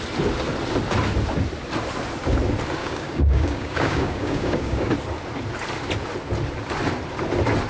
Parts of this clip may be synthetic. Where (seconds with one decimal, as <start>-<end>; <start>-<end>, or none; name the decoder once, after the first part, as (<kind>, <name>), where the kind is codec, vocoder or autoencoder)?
2.8-4.9 (codec, DAC)